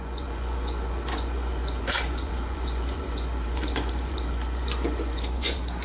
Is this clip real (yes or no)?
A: no